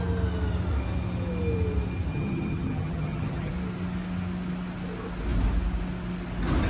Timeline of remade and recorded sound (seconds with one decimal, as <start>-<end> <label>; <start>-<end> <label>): 0.0-2.1 recorded; 2.1-3.5 remade; 3.5-6.7 recorded